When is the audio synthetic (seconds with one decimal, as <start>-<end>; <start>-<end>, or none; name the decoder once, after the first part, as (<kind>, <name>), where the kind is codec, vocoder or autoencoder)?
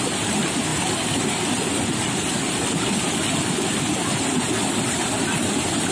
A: none